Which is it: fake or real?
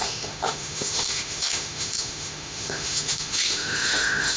fake